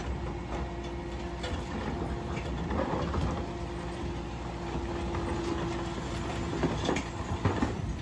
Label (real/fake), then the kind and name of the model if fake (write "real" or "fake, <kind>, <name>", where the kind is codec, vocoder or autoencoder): real